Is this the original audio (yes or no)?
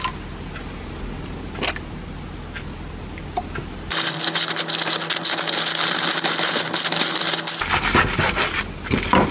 yes